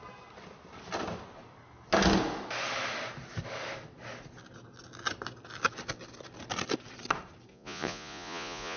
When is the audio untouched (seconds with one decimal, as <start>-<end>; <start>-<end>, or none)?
0.0-7.5